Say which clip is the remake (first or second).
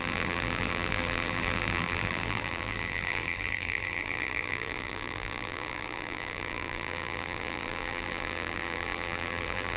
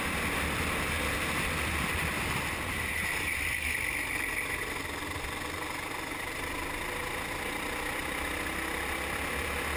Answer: first